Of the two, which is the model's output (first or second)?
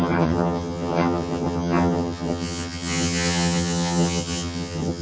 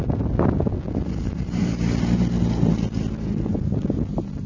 first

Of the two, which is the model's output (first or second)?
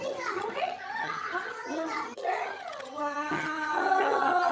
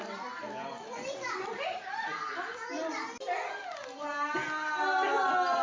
first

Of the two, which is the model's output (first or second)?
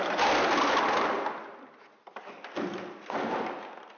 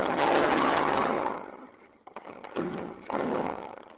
second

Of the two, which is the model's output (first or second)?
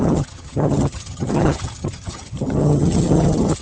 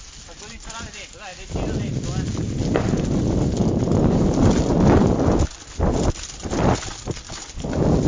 first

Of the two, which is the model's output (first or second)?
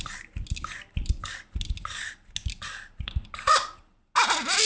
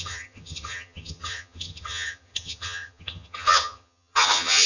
second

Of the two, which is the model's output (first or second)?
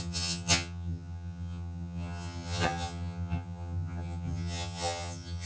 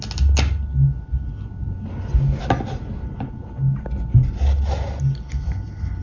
first